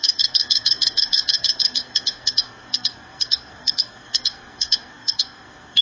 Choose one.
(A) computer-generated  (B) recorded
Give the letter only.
A